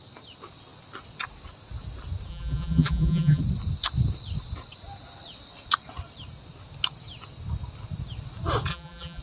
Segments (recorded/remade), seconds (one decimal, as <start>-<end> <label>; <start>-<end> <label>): 0.0-2.3 recorded; 2.3-3.4 remade; 3.4-8.7 recorded; 8.7-9.2 remade